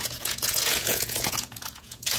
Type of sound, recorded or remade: remade